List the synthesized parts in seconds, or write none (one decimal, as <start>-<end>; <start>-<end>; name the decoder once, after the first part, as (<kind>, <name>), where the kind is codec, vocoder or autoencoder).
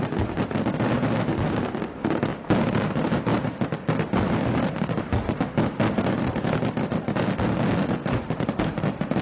8.0-8.5 (vocoder, BigVGAN v2)